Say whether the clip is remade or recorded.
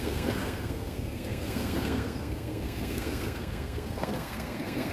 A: remade